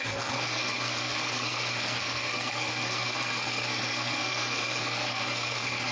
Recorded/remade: remade